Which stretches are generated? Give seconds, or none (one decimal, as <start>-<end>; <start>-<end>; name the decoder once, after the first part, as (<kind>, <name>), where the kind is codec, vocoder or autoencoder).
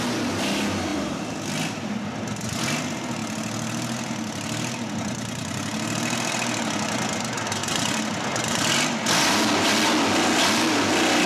none